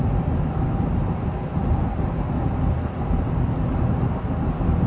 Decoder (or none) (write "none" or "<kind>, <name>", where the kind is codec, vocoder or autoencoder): none